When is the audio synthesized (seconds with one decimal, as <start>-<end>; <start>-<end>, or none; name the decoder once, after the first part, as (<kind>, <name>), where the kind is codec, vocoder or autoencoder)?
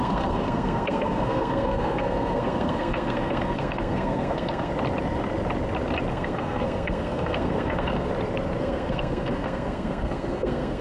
0.0-4.7 (codec, SNAC); 6.1-8.1; 8.6-10.8